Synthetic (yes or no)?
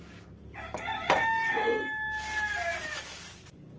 no